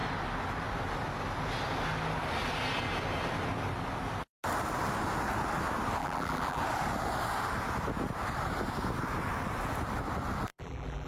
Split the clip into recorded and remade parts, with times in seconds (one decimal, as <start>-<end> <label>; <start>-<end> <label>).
0.0-6.0 recorded; 6.0-6.6 remade; 6.6-10.5 recorded; 10.5-11.1 remade